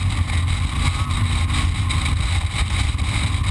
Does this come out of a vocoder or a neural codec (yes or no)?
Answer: no